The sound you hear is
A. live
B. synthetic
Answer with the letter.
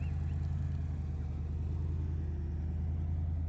A